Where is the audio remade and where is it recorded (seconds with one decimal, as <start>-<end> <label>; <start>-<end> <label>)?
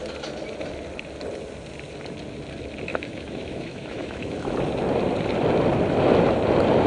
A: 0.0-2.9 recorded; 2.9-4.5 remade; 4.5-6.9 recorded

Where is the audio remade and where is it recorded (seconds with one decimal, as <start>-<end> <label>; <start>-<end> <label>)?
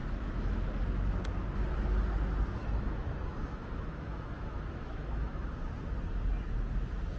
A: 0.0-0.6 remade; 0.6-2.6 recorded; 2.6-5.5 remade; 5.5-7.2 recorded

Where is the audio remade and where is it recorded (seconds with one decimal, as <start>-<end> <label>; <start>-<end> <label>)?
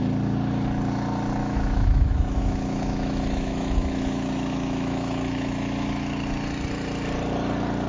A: 0.0-1.4 recorded; 1.4-5.9 remade; 5.9-7.9 recorded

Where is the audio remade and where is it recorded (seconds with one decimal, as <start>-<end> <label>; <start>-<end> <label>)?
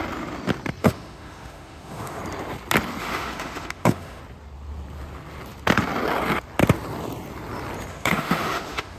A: 0.0-0.8 recorded; 0.8-2.2 remade; 2.2-3.0 recorded; 3.0-4.2 remade; 4.2-7.9 recorded; 7.9-9.0 remade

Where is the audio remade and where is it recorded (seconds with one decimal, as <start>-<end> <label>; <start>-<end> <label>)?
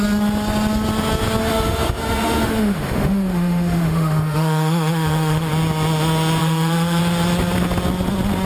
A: 0.0-1.4 recorded; 1.4-5.5 remade; 5.5-6.4 recorded; 6.4-7.0 remade; 7.0-8.4 recorded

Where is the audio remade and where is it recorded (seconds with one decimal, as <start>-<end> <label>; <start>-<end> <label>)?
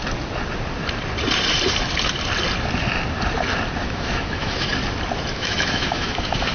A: 0.0-3.8 recorded; 3.8-4.7 remade; 4.7-5.3 recorded; 5.3-6.5 remade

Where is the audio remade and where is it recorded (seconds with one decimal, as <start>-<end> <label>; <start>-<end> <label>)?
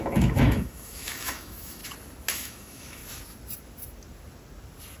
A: 0.0-1.8 remade; 1.8-2.3 recorded; 2.3-3.0 remade; 3.0-5.0 recorded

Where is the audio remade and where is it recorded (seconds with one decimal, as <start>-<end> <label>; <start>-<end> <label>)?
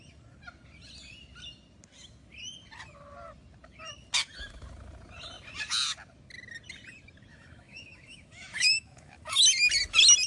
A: 0.0-7.3 recorded; 7.3-9.4 remade; 9.4-10.3 recorded